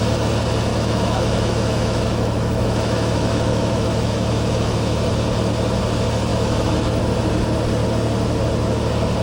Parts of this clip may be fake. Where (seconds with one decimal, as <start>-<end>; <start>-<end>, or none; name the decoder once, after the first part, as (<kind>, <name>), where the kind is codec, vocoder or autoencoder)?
0.7-5.1 (autoencoder, DAC-VAE); 6.3-7.0